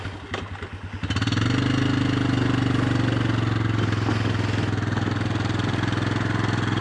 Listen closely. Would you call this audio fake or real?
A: real